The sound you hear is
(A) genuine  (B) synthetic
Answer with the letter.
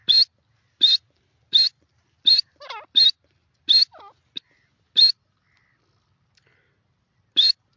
A